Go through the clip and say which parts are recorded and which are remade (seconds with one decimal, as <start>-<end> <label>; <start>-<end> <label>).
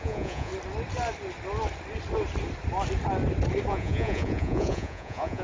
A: 0.0-0.5 remade; 0.5-3.7 recorded; 3.7-5.4 remade